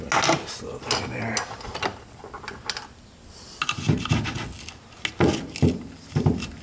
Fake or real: real